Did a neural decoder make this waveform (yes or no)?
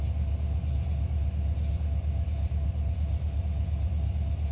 no